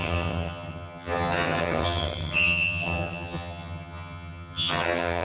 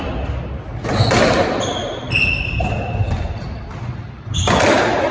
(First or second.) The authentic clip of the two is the second